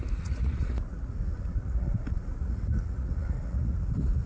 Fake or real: fake